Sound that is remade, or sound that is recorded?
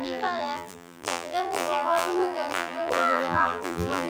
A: remade